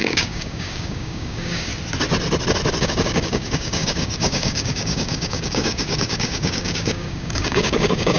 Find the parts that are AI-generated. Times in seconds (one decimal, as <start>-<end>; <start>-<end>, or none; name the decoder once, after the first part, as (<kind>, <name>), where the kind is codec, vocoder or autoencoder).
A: 0.0-1.7 (codec, DAC); 2.8-8.2